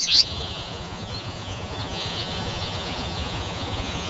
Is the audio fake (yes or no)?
yes